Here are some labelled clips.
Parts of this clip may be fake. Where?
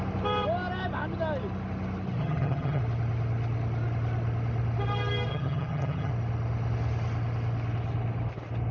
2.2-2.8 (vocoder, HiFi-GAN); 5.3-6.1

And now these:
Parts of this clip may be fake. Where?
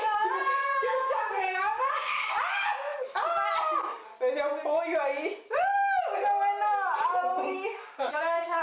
0.6-2.3 (codec, DAC); 7.3-8.6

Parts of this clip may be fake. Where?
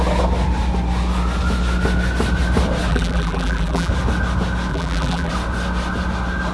2.9-3.9 (vocoder, BigVGAN v2); 4.7-5.3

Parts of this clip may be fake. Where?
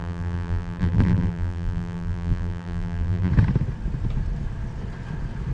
0.0-3.3 (vocoder, BigVGAN v2)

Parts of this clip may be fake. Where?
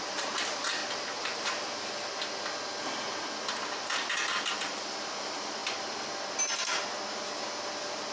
0.0-0.8 (vocoder, BigVGAN v2); 4.5-5.6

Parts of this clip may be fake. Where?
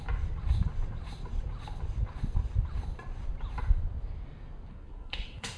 4.7-5.6 (codec, SNAC)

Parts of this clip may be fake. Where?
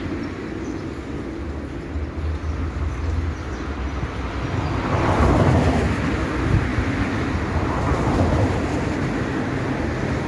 none